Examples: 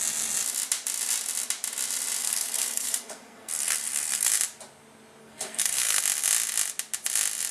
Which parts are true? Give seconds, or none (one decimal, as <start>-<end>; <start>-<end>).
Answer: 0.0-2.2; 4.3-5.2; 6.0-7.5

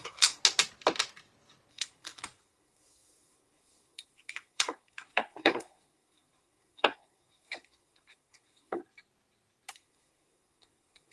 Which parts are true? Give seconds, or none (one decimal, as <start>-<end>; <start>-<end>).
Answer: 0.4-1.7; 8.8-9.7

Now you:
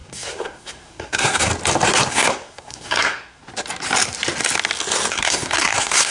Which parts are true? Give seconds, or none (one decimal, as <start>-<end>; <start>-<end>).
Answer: 1.5-2.1; 3.4-5.1

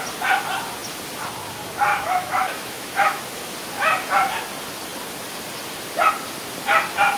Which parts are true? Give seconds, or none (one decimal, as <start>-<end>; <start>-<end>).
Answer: 0.0-1.9; 3.2-7.2

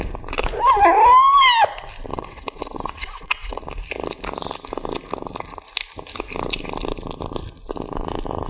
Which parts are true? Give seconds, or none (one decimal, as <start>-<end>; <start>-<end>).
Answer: 0.0-2.1; 3.6-8.5